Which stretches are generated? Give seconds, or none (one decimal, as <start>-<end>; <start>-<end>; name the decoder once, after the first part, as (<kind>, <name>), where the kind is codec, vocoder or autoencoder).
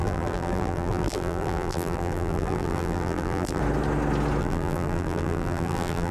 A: 0.0-3.6 (vocoder, BigVGAN v2); 4.4-6.1